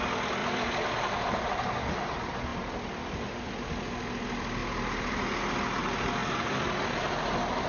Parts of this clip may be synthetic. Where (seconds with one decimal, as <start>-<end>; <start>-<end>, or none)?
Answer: 0.4-1.5; 4.6-5.4